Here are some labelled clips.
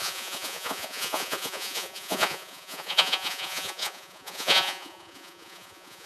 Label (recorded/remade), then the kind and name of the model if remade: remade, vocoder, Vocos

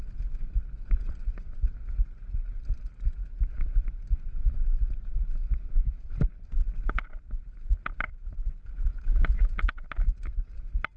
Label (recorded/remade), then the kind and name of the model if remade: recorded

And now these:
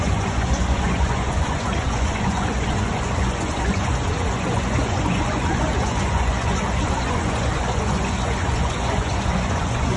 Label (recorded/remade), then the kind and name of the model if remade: remade, vocoder, Vocos